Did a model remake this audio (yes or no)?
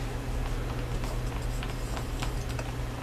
no